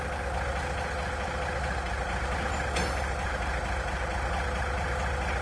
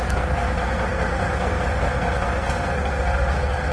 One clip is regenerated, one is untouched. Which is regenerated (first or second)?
second